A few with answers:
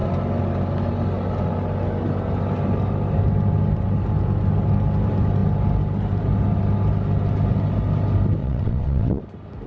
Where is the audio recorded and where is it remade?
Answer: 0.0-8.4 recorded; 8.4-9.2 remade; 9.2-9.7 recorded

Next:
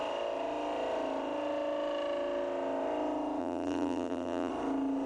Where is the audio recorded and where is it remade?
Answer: 0.0-3.4 recorded; 3.4-4.5 remade; 4.5-5.1 recorded

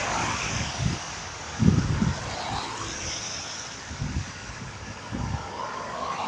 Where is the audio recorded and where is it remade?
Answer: 0.0-2.1 remade; 2.1-3.9 recorded; 3.9-6.3 remade

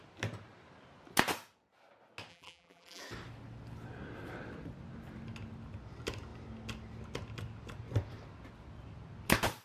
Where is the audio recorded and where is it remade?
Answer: 0.0-2.3 recorded; 2.3-3.0 remade; 3.0-9.6 recorded

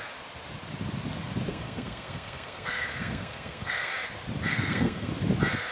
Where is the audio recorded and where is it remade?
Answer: 0.0-1.5 recorded; 1.5-3.9 remade; 3.9-4.5 recorded; 4.5-5.1 remade; 5.1-5.7 recorded

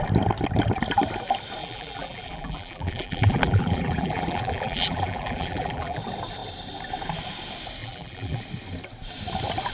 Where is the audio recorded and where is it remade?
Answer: 0.0-1.6 recorded; 1.6-6.0 remade; 6.0-7.8 recorded; 7.8-8.4 remade; 8.4-9.7 recorded